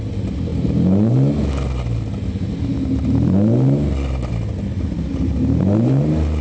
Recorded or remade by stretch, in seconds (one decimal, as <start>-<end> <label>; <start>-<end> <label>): 0.0-6.4 recorded